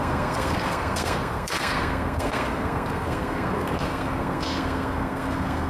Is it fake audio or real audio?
fake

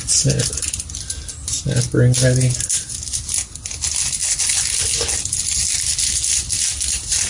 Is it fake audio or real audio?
real